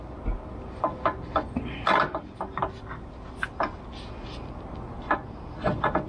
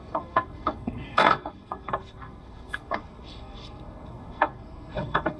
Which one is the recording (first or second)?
first